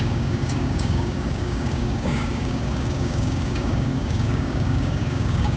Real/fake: fake